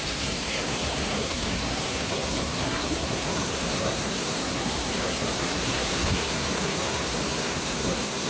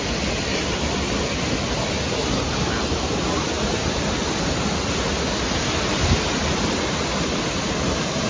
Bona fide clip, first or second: second